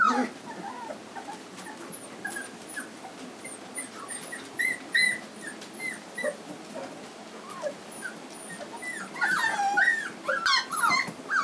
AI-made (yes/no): no